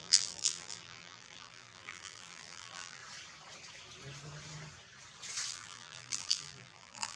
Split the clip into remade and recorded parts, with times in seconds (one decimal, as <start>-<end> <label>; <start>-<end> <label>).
0.0-3.0 remade; 3.0-5.5 recorded; 5.5-7.2 remade